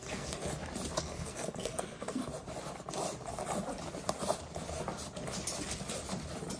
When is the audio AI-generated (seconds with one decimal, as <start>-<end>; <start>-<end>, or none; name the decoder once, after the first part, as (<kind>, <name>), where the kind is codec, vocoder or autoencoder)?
0.0-0.5 (codec, SNAC); 1.0-2.2